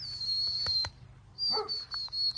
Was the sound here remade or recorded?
recorded